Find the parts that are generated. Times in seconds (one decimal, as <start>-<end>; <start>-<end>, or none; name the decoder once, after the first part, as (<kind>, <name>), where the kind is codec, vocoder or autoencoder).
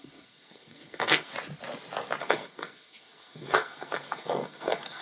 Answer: 0.0-1.3 (codec, SNAC); 2.2-5.0